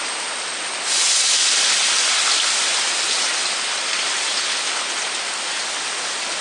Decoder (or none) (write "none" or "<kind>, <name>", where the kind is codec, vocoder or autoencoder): none